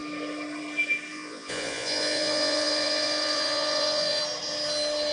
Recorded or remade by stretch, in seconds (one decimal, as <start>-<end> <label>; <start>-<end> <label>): 0.0-1.1 recorded; 1.1-4.2 remade; 4.2-5.1 recorded